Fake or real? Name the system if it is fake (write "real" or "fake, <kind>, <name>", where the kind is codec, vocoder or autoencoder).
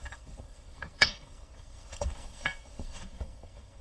fake, codec, SNAC